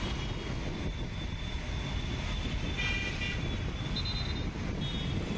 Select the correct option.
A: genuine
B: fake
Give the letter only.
A